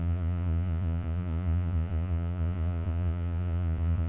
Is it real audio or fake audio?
fake